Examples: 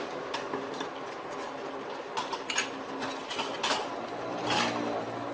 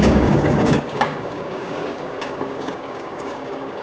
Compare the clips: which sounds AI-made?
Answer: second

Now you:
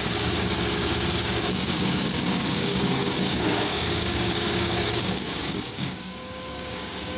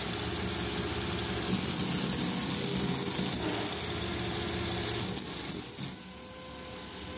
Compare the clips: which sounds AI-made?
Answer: first